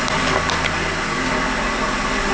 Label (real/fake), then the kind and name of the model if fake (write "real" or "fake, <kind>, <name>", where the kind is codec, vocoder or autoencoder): real